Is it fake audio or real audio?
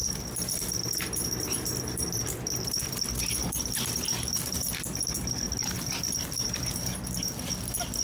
fake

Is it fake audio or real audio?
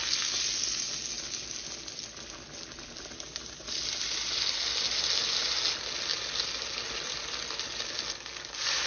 real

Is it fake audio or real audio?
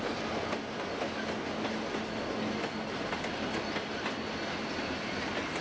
real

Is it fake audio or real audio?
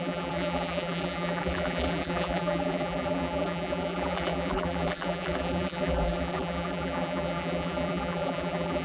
fake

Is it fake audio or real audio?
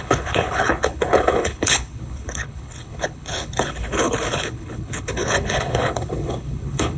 fake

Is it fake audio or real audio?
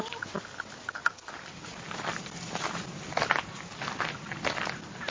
real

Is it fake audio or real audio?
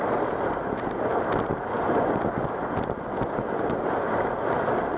real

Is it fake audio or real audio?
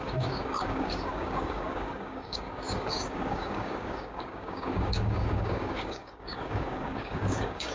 fake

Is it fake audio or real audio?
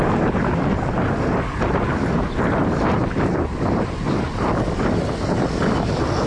real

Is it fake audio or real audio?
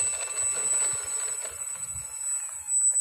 real